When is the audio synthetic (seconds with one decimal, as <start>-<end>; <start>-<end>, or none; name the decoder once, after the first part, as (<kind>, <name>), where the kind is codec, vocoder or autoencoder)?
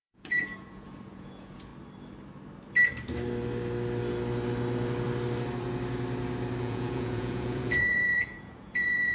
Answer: 0.0-1.7 (vocoder, Vocos); 6.6-9.1